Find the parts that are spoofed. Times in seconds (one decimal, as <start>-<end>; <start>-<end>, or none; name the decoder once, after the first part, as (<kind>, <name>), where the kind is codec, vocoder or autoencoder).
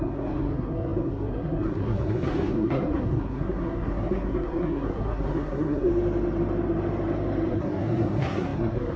0.0-5.9 (codec, SNAC); 7.5-9.0